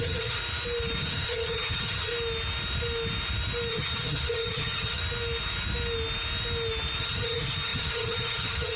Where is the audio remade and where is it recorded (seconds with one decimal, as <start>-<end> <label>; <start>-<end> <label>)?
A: 0.0-0.4 remade; 0.4-1.0 recorded; 1.0-2.1 remade; 2.1-3.7 recorded; 3.7-5.0 remade; 5.0-7.0 recorded; 7.0-8.8 remade